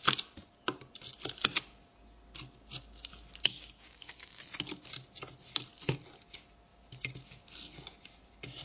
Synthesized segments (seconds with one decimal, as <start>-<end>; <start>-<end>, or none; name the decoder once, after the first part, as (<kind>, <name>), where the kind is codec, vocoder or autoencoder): 3.5-4.4 (codec, DAC)